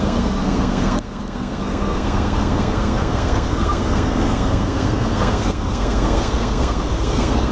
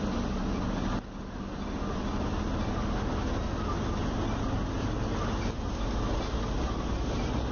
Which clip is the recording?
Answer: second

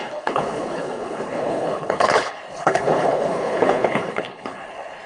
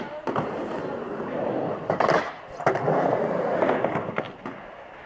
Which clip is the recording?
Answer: second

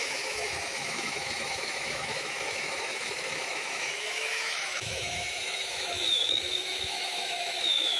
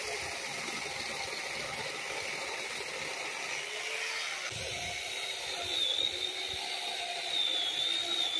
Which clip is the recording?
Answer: second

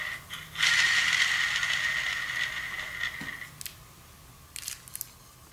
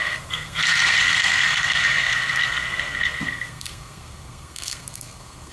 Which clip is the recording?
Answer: first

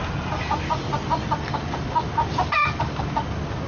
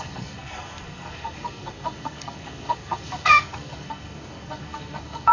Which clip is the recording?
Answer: first